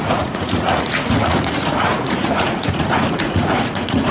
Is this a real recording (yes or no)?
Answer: no